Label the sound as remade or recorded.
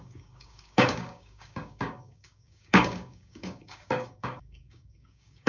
remade